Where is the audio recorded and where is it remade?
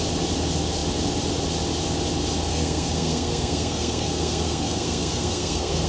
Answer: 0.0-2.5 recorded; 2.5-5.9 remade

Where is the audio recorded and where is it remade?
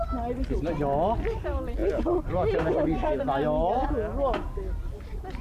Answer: 0.0-5.4 recorded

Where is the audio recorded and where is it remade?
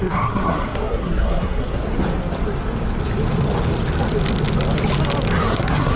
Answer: 0.0-1.8 remade; 1.8-5.4 recorded; 5.4-6.0 remade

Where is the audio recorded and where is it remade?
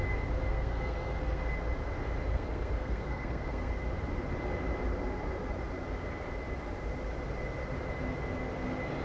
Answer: 0.0-0.5 recorded; 0.5-1.4 remade; 1.4-2.3 recorded; 2.3-3.7 remade; 3.7-9.0 recorded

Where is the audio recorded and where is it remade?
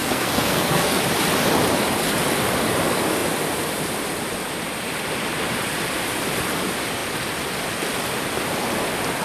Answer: 0.0-1.0 remade; 1.0-9.2 recorded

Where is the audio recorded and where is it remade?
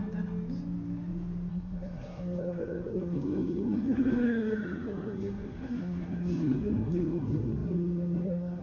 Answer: 0.0-1.5 recorded; 1.5-8.6 remade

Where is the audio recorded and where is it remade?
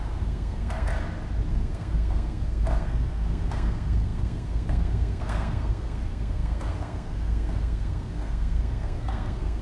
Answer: 0.0-0.9 remade; 0.9-1.5 recorded; 1.5-9.6 remade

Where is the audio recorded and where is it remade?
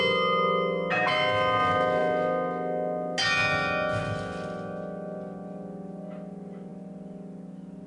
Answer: 0.0-7.9 recorded